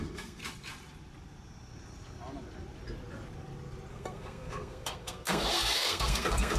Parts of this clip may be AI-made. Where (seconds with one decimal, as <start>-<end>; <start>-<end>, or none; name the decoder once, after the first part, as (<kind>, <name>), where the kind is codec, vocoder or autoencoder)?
0.0-0.4 (codec, SNAC); 3.9-6.6